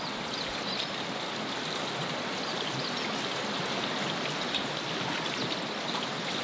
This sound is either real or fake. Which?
real